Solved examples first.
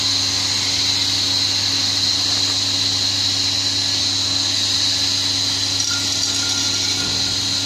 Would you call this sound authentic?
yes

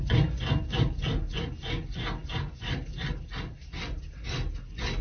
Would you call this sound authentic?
yes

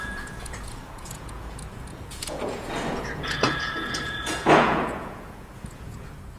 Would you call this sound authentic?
no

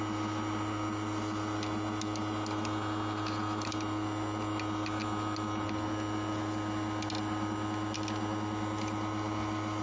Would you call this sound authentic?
yes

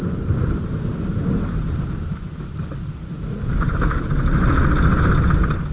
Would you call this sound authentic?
no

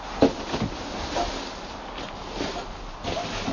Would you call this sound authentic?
yes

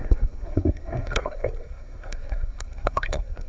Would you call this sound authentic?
no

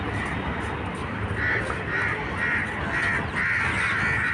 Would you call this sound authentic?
yes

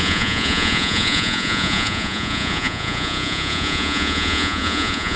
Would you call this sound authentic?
no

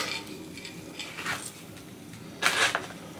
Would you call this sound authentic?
yes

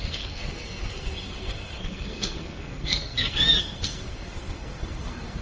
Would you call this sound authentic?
no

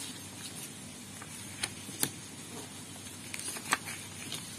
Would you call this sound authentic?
yes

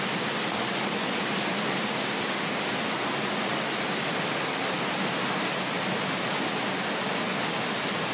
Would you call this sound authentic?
yes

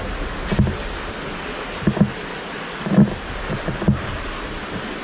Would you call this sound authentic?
yes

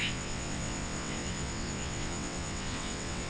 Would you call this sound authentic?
no